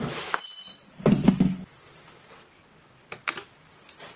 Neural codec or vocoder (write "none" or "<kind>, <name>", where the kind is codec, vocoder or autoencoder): none